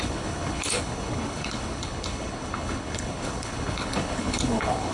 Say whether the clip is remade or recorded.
remade